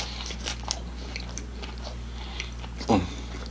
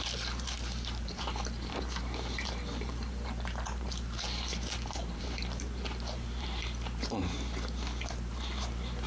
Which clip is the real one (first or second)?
first